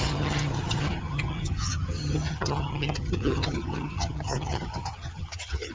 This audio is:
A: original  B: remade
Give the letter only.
B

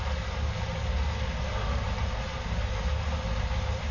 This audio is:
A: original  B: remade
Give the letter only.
A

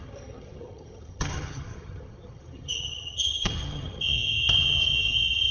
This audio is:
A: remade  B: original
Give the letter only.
A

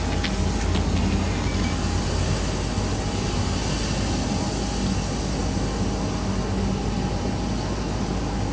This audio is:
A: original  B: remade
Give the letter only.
A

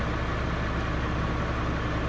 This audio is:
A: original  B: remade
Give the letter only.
A